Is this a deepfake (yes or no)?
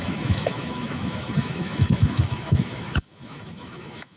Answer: yes